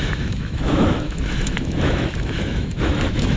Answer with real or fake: fake